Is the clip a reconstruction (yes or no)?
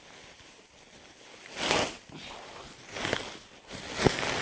no